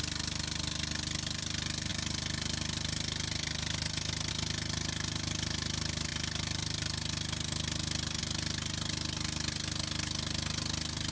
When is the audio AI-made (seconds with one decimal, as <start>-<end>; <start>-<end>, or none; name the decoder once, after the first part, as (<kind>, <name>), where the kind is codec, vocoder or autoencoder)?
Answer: none